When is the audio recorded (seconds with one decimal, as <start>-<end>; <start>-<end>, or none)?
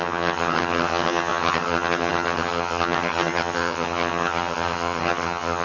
none